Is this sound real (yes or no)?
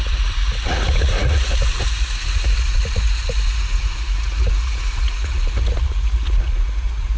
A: no